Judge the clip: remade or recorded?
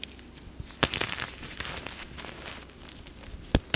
recorded